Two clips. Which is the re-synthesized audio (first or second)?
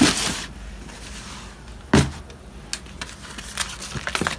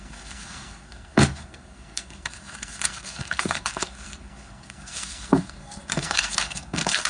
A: second